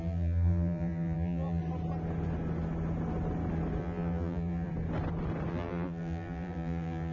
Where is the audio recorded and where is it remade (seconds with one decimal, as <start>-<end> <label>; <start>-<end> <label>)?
0.0-1.6 remade; 1.6-3.8 recorded; 3.8-4.7 remade; 4.7-5.5 recorded; 5.5-7.1 remade